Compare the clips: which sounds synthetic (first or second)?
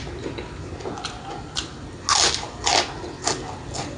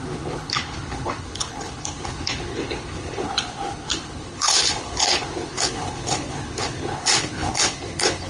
second